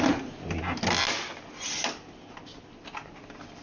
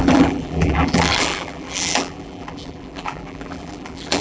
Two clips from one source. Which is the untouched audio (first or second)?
first